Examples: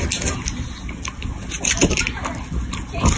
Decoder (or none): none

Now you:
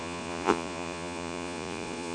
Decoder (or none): vocoder, Vocos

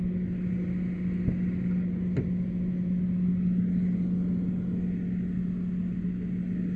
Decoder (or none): none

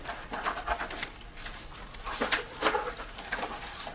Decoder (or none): none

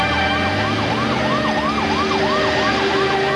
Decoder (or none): none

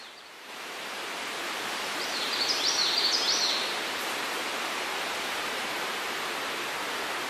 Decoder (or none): vocoder, BigVGAN v2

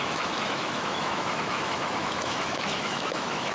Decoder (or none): autoencoder, DAC-VAE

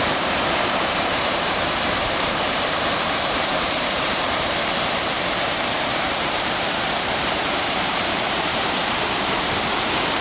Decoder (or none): vocoder, BigVGAN v2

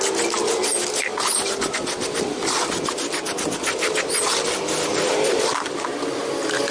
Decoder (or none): none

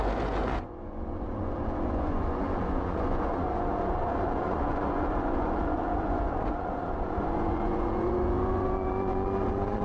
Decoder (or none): vocoder, Vocos